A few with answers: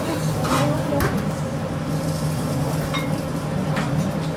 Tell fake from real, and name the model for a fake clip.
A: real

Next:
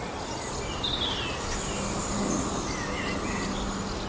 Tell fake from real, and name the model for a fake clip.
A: real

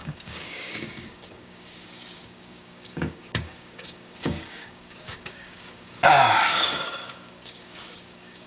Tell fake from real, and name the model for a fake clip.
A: fake, codec, DAC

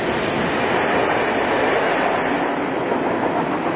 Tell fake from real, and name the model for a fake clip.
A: real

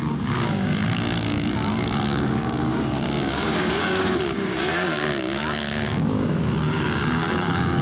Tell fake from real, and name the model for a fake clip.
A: fake, codec, DAC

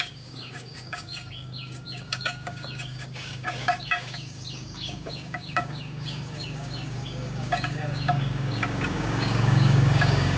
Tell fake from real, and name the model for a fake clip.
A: fake, codec, DAC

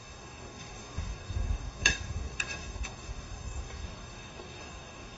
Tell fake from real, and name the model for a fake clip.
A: fake, codec, DAC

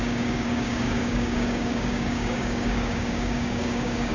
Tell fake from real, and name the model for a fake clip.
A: fake, codec, DAC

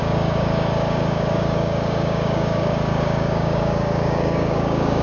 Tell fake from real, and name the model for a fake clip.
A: fake, codec, DAC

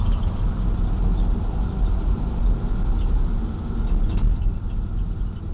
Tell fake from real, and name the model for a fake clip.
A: real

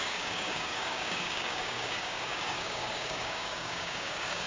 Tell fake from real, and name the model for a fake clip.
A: fake, codec, DAC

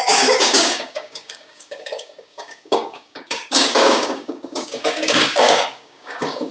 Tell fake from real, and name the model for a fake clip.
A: fake, codec, DAC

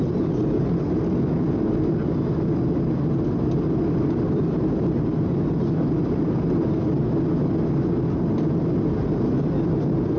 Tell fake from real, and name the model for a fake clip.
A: real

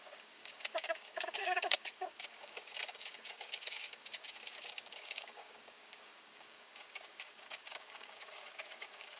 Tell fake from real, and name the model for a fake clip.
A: fake, codec, DAC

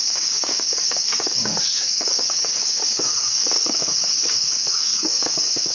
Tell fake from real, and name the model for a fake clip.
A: fake, codec, DAC